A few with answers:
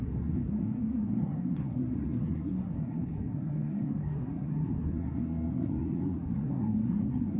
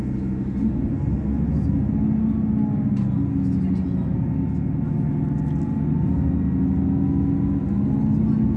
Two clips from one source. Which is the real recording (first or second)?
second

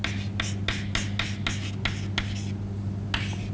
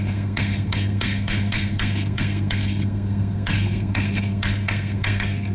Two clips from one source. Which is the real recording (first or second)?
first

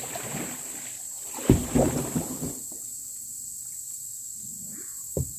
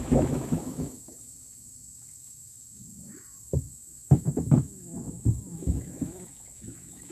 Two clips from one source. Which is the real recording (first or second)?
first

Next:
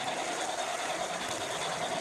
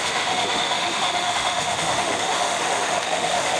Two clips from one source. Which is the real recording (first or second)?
first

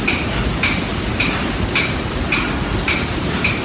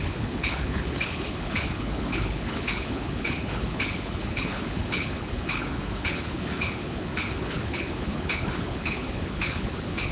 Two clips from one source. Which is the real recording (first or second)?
first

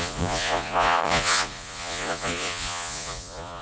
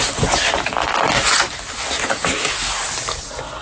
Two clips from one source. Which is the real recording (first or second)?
second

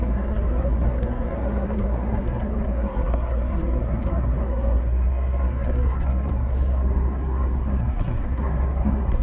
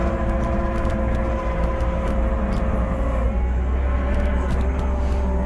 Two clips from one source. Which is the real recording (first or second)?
second